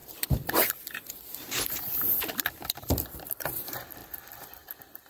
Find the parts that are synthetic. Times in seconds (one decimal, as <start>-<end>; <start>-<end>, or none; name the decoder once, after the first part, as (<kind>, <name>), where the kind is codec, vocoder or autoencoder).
0.0-5.1 (vocoder, BigVGAN v2)